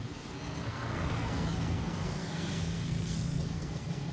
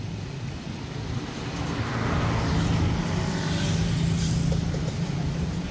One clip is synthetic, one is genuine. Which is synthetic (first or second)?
first